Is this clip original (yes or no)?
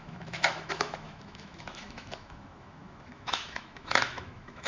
no